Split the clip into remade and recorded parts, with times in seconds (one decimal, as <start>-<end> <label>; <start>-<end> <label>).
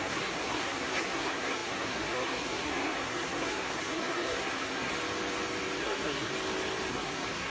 0.0-4.9 remade; 4.9-5.8 recorded; 5.8-6.3 remade; 6.3-6.9 recorded; 6.9-7.5 remade